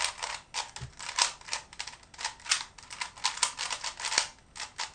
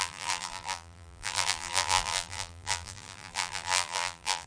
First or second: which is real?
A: first